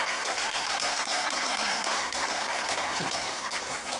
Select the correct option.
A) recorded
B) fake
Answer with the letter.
B